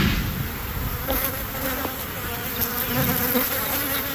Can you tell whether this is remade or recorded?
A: recorded